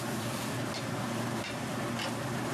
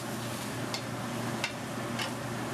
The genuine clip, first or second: second